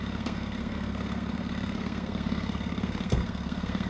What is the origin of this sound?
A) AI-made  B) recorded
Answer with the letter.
A